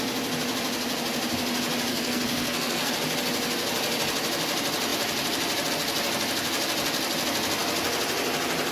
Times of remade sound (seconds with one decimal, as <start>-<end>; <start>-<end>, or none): 1.9-2.9